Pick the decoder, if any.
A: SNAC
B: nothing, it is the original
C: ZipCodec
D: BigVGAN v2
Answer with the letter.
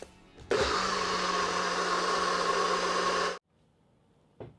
B